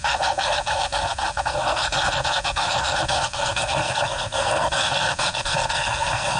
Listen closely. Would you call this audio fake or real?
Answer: fake